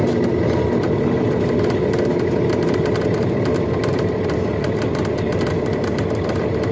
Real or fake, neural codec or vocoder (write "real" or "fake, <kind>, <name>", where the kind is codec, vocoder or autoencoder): real